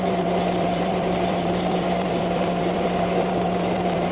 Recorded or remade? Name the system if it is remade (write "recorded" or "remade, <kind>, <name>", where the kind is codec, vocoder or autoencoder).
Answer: remade, vocoder, BigVGAN v2